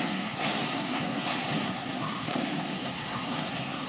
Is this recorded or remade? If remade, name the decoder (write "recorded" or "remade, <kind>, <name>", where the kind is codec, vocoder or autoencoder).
remade, codec, SNAC